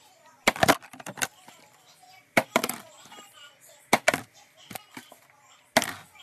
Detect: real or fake real